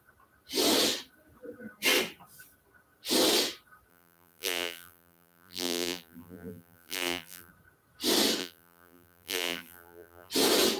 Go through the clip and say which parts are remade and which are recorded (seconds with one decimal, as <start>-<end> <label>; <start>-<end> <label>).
0.0-3.9 recorded; 3.9-7.5 remade; 7.5-8.4 recorded; 8.4-10.3 remade; 10.3-10.8 recorded